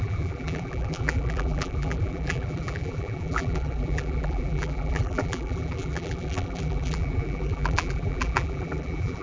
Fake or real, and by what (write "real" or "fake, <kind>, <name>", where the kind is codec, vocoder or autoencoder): fake, vocoder, BigVGAN v2